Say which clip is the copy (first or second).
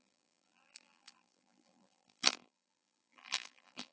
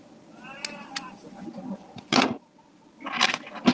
first